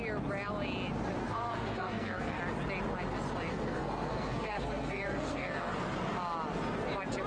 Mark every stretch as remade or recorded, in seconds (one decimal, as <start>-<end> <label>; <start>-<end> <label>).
0.0-1.2 recorded; 1.2-2.4 remade; 2.4-3.5 recorded; 3.5-5.7 remade; 5.7-7.3 recorded